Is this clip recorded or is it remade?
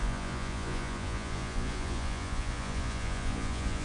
remade